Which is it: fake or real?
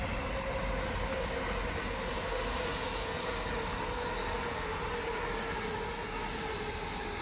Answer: real